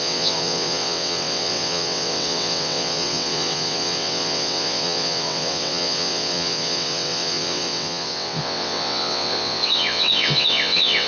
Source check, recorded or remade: remade